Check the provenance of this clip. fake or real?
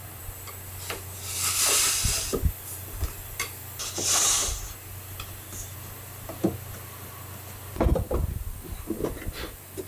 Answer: real